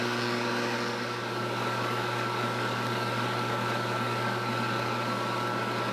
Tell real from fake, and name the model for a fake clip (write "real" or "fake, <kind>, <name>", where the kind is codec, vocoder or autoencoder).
fake, codec, DAC